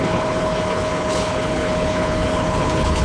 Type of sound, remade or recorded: remade